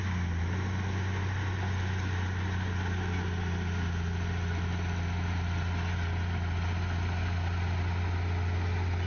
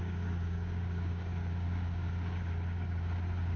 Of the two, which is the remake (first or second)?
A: second